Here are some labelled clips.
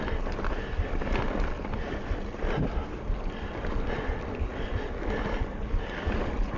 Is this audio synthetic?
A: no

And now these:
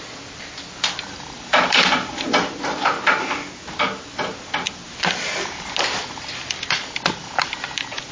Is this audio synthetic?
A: no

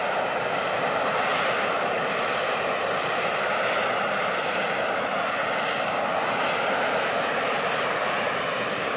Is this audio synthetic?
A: no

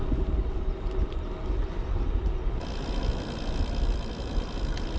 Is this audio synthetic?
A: no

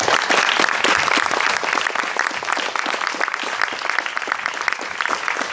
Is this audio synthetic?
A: no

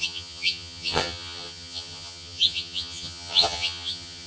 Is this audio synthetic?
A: yes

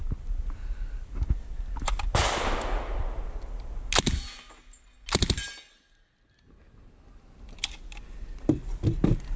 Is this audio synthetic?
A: no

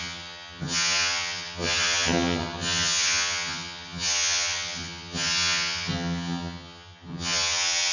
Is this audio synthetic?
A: yes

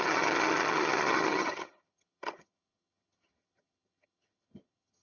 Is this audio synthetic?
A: yes